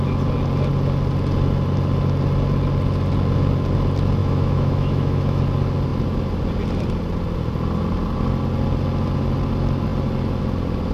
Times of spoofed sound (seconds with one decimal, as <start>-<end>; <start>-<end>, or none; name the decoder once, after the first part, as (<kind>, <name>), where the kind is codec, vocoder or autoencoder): 4.2-5.4 (autoencoder, DAC-VAE)